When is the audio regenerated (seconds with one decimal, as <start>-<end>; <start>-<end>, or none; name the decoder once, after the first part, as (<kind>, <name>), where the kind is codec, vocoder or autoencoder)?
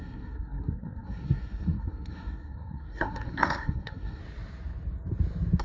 0.0-4.2 (codec, SNAC)